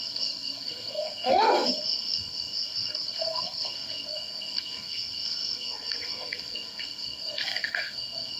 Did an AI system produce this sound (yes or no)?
yes